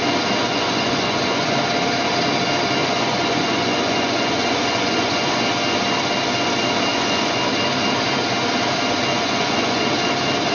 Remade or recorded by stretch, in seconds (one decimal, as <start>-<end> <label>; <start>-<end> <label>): 0.0-0.4 recorded; 0.4-1.6 remade; 1.6-2.8 recorded; 2.8-5.4 remade; 5.4-6.9 recorded; 6.9-7.4 remade; 7.4-9.1 recorded; 9.1-9.8 remade; 9.8-10.5 recorded